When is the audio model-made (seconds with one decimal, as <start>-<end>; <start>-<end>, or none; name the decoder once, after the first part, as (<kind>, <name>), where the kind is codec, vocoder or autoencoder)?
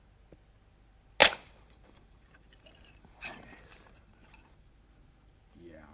1.2-4.7 (vocoder, BigVGAN v2)